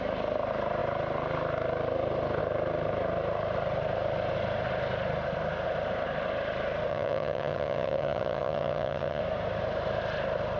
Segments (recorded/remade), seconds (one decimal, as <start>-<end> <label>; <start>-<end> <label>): 0.0-6.9 recorded; 6.9-9.2 remade; 9.2-10.6 recorded